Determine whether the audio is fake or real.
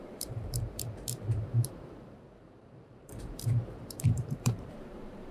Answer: fake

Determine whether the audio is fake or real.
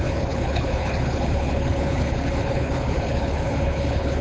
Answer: fake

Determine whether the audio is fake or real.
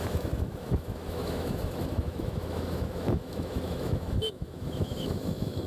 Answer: fake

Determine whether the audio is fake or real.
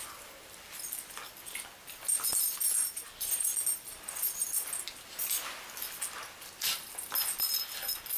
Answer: real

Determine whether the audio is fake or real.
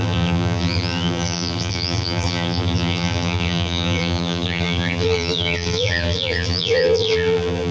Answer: fake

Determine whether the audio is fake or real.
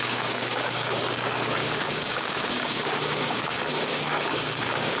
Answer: fake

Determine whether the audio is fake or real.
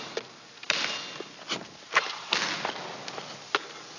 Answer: real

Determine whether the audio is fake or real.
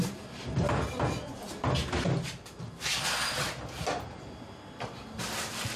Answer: real